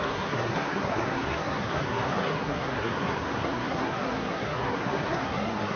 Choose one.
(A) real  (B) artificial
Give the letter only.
B